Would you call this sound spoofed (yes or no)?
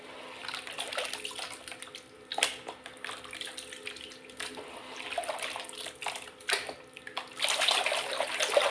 no